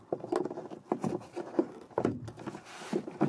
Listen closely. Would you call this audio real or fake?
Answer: real